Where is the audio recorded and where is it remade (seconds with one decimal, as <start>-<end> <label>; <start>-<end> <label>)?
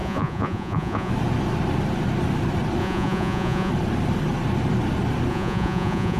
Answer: 0.0-1.1 remade; 1.1-2.8 recorded; 2.8-3.7 remade; 3.7-5.3 recorded; 5.3-6.2 remade